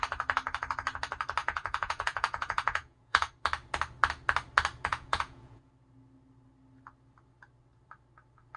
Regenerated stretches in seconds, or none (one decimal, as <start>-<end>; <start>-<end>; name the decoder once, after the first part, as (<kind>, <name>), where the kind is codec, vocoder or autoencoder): 1.4-3.3 (vocoder, Vocos); 4.9-5.7

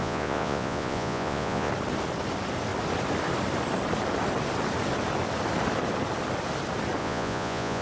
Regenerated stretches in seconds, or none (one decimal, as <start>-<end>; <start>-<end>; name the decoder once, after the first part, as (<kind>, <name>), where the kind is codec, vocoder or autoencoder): 0.0-1.7 (vocoder, Vocos); 7.0-7.8

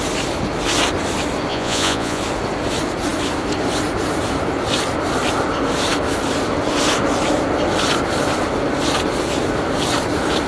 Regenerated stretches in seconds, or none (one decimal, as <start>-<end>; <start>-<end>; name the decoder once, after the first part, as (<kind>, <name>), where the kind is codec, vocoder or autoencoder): 1.5-2.2 (vocoder, Vocos)